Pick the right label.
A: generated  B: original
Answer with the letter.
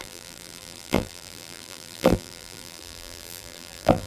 A